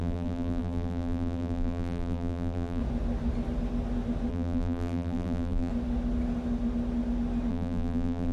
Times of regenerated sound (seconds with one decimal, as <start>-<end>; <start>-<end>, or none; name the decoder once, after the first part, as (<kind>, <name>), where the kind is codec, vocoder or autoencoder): 0.0-2.8 (vocoder, BigVGAN v2); 4.3-5.7; 7.5-8.3